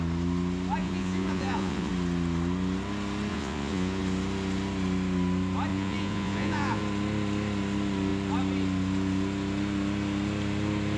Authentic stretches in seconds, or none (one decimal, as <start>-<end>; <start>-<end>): 0.0-0.8; 1.9-3.3; 4.0-5.7; 6.8-11.0